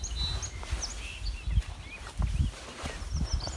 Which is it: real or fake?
real